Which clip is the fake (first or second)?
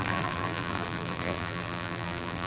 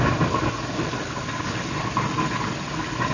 first